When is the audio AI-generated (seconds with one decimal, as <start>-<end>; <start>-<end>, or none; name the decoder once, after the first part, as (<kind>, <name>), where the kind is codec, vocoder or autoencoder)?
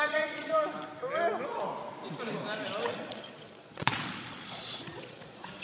0.0-0.5 (vocoder, Vocos); 2.9-5.6